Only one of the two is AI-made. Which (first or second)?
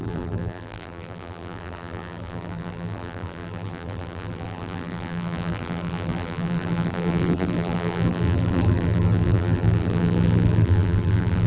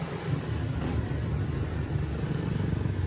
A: first